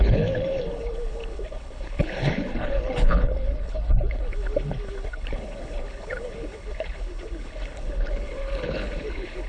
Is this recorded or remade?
remade